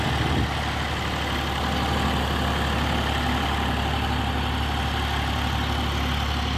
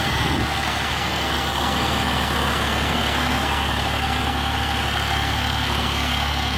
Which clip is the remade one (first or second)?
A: second